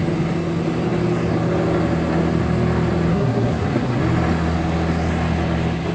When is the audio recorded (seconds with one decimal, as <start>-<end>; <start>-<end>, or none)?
0.0-3.1; 4.0-5.9